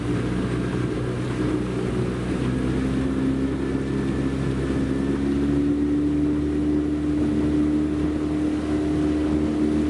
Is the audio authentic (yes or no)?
yes